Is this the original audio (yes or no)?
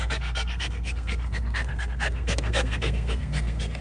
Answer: no